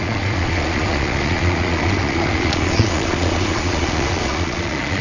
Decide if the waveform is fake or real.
fake